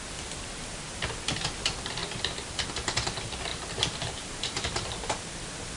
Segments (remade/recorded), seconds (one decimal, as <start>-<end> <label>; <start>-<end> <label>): 0.0-3.5 recorded; 3.5-5.3 remade; 5.3-5.8 recorded